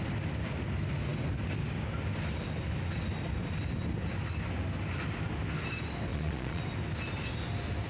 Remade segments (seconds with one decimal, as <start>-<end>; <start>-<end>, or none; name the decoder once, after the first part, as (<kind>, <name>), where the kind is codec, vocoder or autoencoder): 6.1-6.6 (vocoder, Vocos)